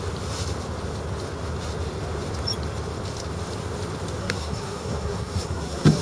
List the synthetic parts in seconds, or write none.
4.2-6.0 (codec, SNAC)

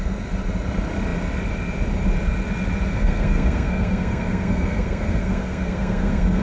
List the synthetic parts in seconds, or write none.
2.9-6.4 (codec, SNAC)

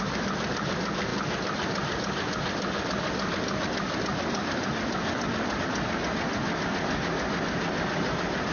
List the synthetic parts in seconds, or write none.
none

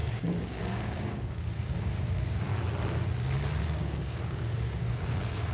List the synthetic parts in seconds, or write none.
0.0-2.5 (codec, DAC); 3.6-5.5

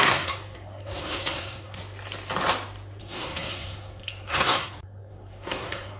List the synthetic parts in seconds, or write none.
0.0-1.8 (codec, SNAC); 3.0-6.0

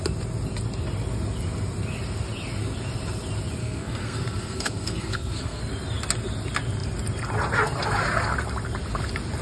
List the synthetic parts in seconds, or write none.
3.6-5.6 (codec, SNAC)

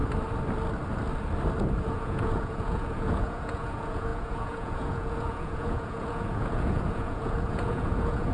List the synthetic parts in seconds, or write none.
1.9-8.3 (vocoder, Vocos)

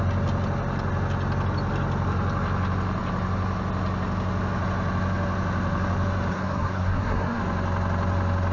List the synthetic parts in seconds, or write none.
6.3-7.4 (codec, SNAC)